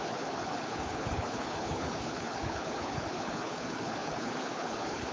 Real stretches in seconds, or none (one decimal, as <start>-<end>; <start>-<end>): none